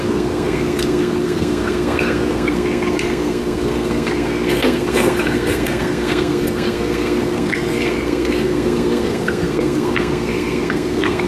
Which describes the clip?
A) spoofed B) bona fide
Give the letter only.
A